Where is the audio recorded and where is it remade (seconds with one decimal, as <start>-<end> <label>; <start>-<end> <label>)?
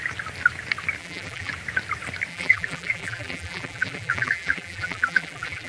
0.0-1.0 recorded; 1.0-1.5 remade; 1.5-2.3 recorded; 2.3-5.7 remade